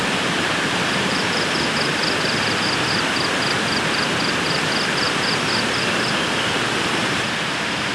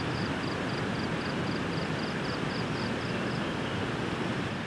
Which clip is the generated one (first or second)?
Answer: first